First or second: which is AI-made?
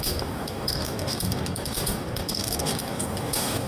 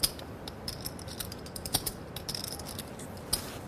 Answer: first